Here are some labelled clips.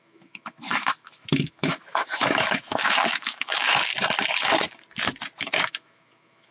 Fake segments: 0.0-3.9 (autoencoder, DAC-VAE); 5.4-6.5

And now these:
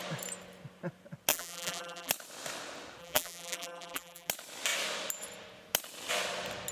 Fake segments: 1.3-2.1 (vocoder, BigVGAN v2); 3.0-4.3

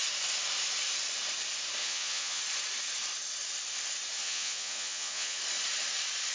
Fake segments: 1.8-2.4 (vocoder, Vocos); 4.2-5.4

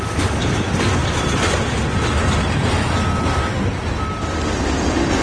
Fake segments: none